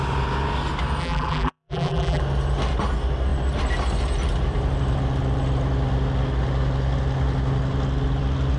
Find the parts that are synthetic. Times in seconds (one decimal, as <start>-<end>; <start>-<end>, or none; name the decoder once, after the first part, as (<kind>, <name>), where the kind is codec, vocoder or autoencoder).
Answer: 1.0-2.2 (vocoder, BigVGAN v2)